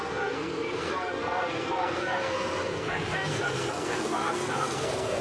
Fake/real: fake